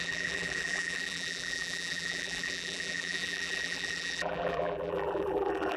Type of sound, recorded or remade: remade